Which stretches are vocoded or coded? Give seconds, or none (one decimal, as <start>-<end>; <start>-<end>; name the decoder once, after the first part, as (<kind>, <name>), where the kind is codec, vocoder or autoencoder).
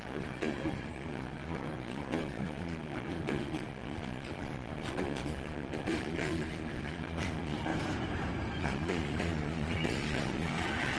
0.0-7.7 (vocoder, Vocos); 8.6-11.0